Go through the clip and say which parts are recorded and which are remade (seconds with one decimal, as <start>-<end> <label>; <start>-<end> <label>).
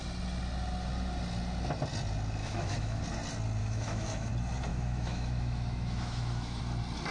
0.0-2.4 recorded; 2.4-3.0 remade; 3.0-3.6 recorded; 3.6-4.3 remade; 4.3-4.7 recorded; 4.7-6.6 remade; 6.6-7.1 recorded